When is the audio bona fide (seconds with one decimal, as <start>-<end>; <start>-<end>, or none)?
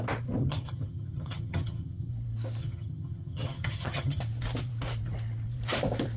0.0-0.4; 2.1-2.6; 4.2-6.2